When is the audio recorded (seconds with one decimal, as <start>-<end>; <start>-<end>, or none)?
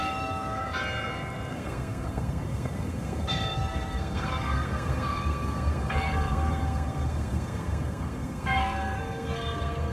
0.6-1.5